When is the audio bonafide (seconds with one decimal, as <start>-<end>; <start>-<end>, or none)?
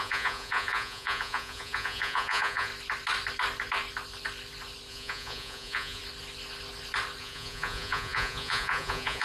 2.7-4.9; 6.0-7.2